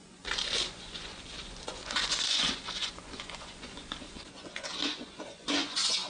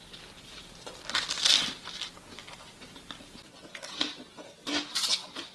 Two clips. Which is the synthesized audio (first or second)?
first